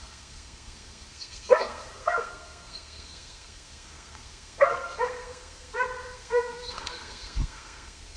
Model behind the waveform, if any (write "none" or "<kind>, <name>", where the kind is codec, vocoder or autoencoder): codec, SNAC